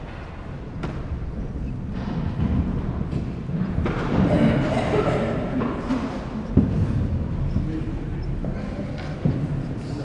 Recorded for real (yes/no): yes